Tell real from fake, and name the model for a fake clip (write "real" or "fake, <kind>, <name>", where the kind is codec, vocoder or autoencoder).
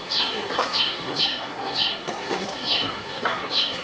fake, codec, SNAC